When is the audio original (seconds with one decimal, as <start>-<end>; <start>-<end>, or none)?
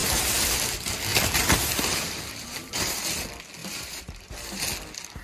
0.5-1.1; 3.0-3.6; 4.6-5.2